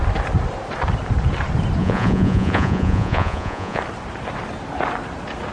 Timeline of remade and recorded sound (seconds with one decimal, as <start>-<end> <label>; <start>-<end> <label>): 0.0-1.8 recorded; 1.8-3.8 remade; 3.8-5.5 recorded